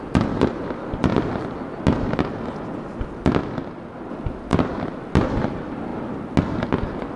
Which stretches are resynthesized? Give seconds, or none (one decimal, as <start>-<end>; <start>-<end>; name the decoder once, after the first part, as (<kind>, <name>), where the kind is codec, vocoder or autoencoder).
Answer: none